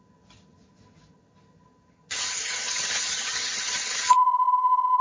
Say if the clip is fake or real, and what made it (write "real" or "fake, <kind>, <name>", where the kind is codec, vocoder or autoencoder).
fake, vocoder, HiFi-GAN